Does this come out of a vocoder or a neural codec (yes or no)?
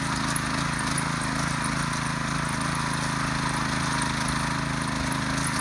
no